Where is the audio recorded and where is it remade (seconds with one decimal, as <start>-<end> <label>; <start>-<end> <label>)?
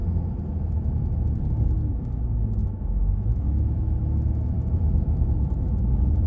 0.0-2.6 recorded; 2.6-6.3 remade